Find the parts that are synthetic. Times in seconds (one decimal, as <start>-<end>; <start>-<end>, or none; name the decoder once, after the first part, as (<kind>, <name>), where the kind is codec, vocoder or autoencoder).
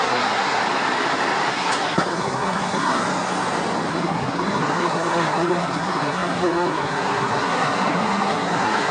0.0-0.6 (codec, SNAC); 1.5-3.0; 3.9-8.9